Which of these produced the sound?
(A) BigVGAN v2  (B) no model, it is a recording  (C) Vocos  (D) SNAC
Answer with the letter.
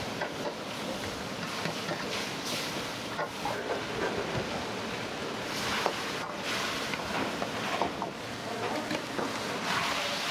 B